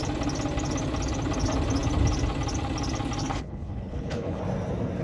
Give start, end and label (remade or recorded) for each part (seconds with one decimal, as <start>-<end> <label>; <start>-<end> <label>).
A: 0.0-3.2 recorded; 3.2-4.4 remade; 4.4-5.0 recorded